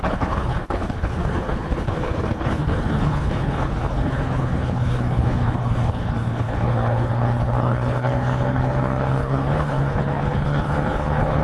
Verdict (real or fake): fake